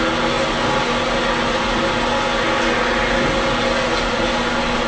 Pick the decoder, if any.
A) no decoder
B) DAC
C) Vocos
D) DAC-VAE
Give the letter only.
A